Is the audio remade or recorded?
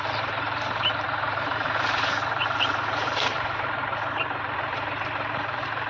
remade